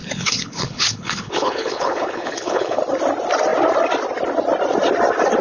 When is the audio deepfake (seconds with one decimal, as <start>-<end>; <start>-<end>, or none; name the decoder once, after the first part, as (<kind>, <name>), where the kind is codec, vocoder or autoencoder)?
0.0-2.8 (codec, HILCodec)